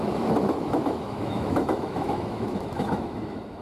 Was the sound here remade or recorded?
remade